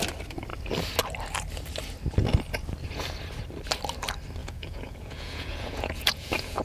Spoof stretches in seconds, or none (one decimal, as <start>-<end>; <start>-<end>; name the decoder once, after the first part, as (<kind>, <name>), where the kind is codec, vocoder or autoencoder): 4.4-6.6 (vocoder, Vocos)